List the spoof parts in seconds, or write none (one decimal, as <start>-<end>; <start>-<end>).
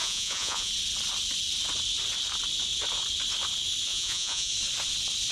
0.0-0.7; 3.9-4.5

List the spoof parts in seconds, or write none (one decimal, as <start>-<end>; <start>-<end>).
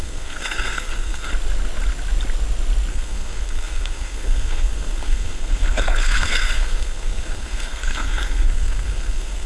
0.0-1.3; 2.9-9.5